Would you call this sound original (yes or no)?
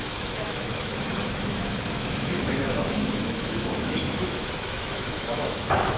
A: no